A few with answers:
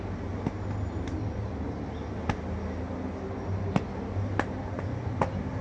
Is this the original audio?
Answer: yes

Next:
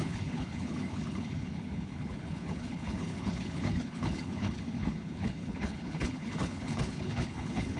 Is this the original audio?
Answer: no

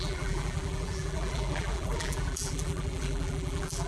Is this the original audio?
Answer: no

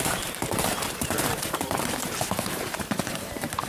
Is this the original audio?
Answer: no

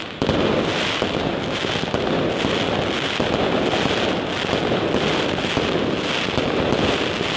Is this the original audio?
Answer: yes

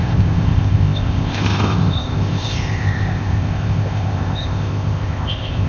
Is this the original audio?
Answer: no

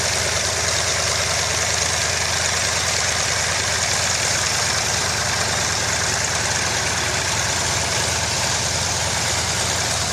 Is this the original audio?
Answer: yes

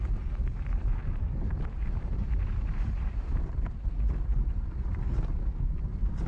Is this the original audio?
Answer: no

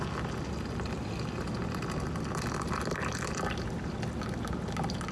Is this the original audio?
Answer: yes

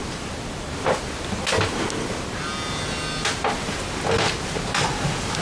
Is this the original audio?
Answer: yes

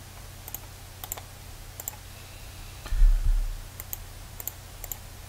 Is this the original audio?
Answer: yes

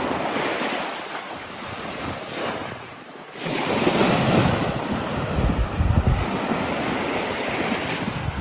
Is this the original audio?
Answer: yes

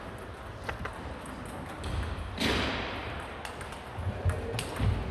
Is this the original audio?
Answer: yes